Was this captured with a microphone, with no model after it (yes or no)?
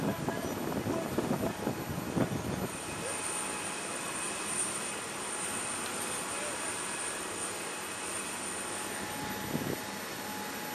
yes